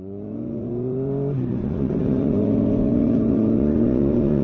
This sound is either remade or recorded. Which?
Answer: remade